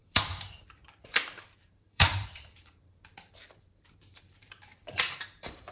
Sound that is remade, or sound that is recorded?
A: remade